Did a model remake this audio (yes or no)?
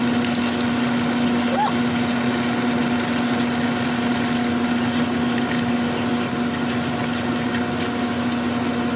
no